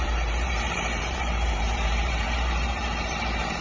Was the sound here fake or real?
fake